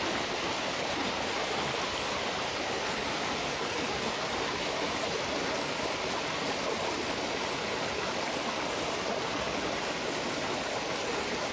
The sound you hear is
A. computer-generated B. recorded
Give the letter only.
B